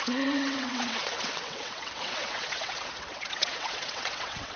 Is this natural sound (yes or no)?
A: no